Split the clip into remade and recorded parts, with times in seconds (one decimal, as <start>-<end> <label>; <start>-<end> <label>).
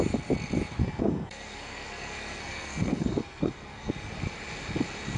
0.0-0.8 recorded; 0.8-3.9 remade; 3.9-5.2 recorded